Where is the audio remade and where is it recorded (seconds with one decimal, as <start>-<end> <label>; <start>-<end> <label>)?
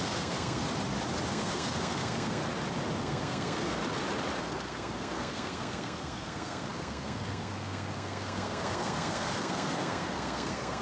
0.0-0.6 remade; 0.6-1.3 recorded; 1.3-2.4 remade; 2.4-3.0 recorded; 3.0-3.8 remade; 3.8-4.4 recorded; 4.4-10.8 remade